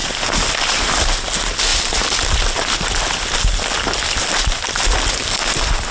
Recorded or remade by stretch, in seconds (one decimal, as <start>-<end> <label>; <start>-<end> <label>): 0.0-5.9 recorded